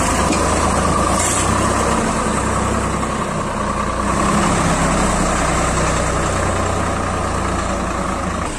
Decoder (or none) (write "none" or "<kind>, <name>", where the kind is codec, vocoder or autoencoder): none